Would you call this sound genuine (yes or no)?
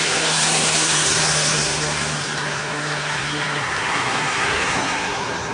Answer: no